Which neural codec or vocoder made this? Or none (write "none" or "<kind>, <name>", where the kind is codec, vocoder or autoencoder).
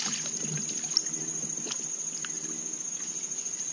none